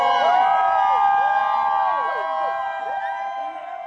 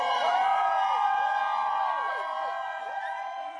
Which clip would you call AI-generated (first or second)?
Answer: second